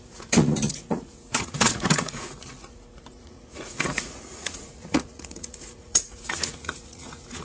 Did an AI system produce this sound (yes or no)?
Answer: yes